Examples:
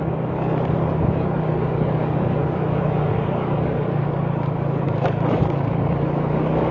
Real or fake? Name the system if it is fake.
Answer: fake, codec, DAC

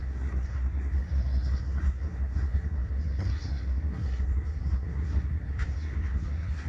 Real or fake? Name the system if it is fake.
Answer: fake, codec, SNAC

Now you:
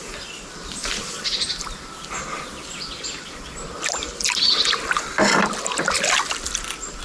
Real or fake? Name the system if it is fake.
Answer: real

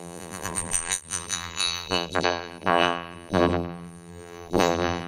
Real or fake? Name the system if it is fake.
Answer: fake, vocoder, BigVGAN v2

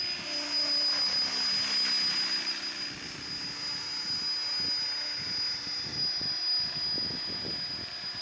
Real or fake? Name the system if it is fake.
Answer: real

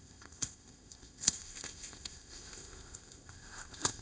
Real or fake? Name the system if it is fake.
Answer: fake, codec, ZipCodec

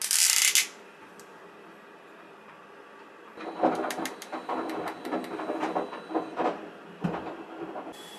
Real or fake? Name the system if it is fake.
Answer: real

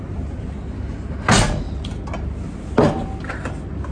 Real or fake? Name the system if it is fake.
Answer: real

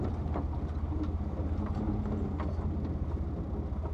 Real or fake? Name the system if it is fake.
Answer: real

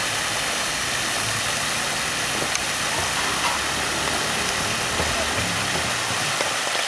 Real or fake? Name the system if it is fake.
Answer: real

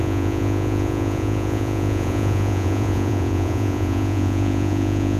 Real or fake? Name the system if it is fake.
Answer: fake, vocoder, Vocos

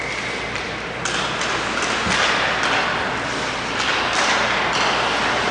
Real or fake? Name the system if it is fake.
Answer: real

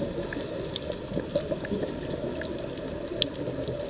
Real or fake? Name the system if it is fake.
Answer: real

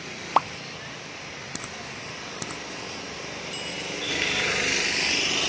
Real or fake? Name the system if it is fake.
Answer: real